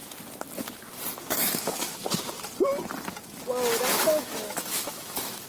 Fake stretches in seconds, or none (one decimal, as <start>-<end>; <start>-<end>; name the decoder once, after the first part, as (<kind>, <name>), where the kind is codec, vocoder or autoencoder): 1.2-2.0 (autoencoder, DAC-VAE); 3.9-5.5